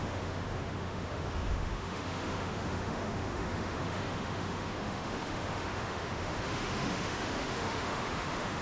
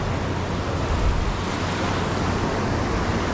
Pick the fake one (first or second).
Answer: first